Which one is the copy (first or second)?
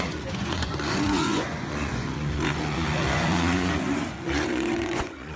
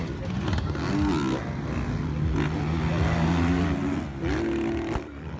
first